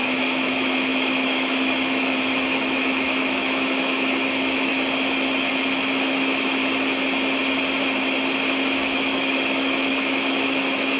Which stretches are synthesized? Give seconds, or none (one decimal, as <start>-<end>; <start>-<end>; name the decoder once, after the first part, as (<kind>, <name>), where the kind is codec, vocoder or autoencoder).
0.0-4.7 (autoencoder, DAC-VAE); 5.5-6.6; 8.7-11.0